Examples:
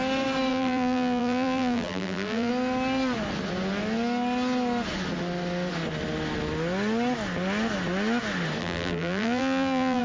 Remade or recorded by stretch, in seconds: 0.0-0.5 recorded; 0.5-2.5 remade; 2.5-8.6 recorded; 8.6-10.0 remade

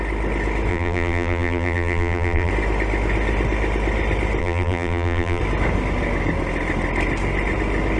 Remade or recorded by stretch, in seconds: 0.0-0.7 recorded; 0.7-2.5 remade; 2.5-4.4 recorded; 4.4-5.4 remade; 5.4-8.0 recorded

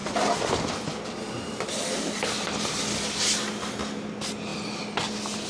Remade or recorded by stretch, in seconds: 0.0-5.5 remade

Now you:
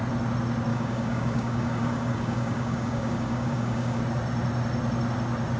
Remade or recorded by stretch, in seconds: 0.0-0.7 recorded; 0.7-4.0 remade; 4.0-5.6 recorded